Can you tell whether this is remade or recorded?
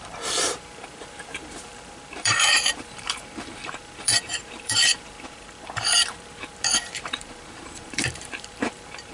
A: remade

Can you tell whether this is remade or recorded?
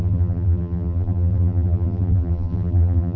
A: remade